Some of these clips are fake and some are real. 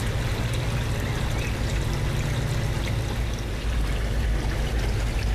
real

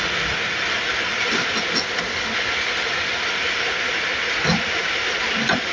real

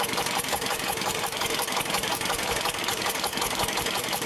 fake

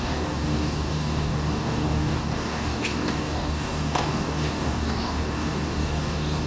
fake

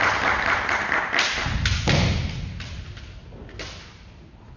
real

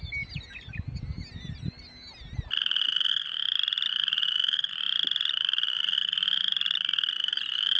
real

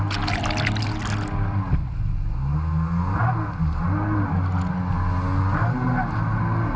real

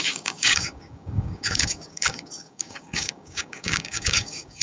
fake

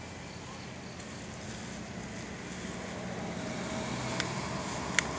real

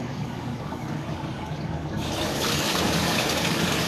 fake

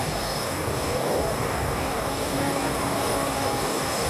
fake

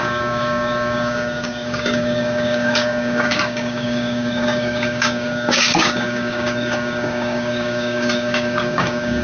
fake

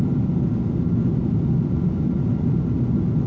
real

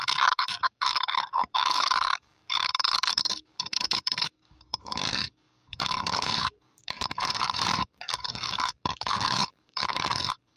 fake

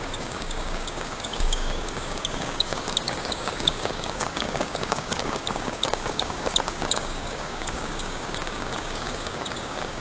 fake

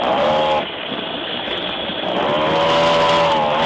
real